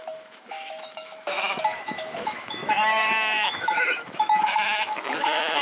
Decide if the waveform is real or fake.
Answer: fake